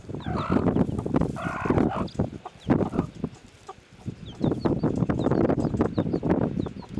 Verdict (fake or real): real